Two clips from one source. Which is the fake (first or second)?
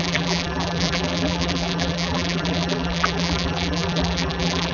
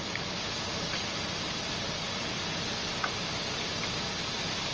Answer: first